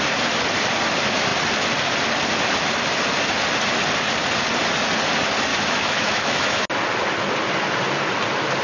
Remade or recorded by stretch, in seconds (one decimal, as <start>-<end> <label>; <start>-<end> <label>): 0.0-5.5 recorded; 5.5-6.7 remade; 6.7-8.6 recorded